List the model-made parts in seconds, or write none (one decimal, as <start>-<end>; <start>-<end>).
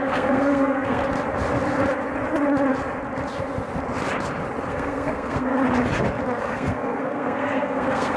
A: 0.0-1.0; 4.7-5.5; 6.4-8.2